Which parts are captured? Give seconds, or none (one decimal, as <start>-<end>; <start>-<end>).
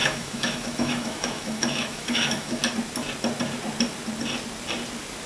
2.6-5.3